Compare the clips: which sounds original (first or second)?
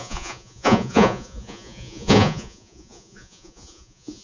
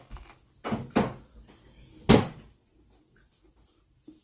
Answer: second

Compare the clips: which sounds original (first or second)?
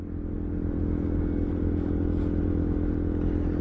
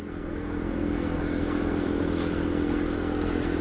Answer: first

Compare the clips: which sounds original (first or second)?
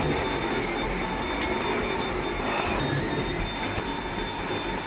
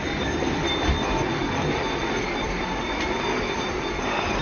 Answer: first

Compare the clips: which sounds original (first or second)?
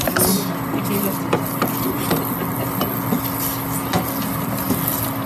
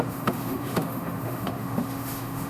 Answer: first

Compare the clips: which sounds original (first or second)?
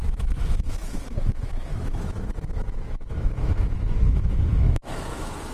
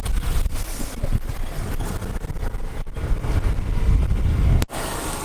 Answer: second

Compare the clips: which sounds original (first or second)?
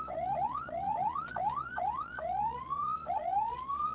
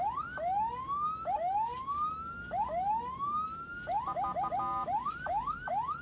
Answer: second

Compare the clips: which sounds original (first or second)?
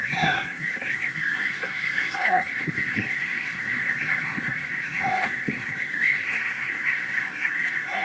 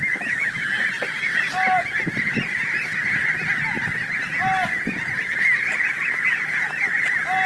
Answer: second